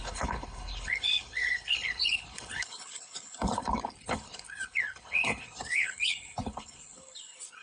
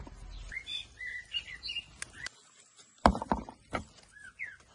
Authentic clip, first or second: second